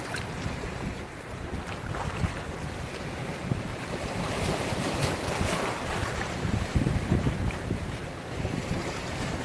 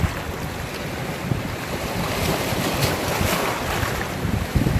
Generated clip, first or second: first